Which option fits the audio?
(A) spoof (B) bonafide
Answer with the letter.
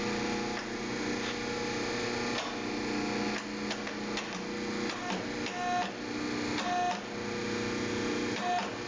B